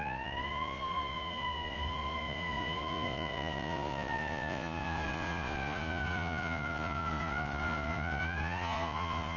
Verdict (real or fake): fake